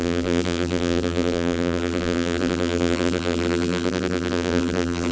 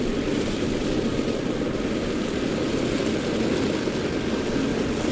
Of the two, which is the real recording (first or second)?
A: second